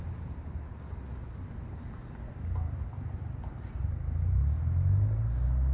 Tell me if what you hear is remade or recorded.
recorded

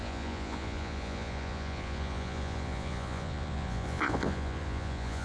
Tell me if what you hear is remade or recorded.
remade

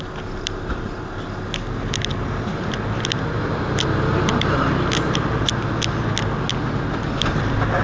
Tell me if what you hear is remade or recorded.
recorded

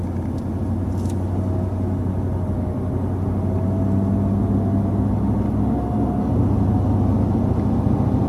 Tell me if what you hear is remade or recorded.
recorded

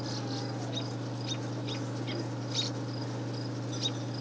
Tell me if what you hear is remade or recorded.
recorded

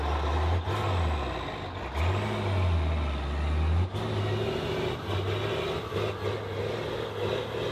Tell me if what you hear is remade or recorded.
recorded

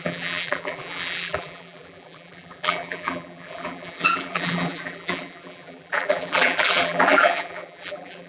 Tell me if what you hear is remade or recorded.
remade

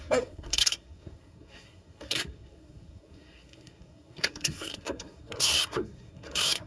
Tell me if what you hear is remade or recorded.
remade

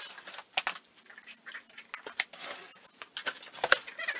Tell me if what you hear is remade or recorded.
recorded